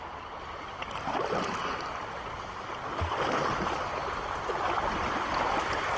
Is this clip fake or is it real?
real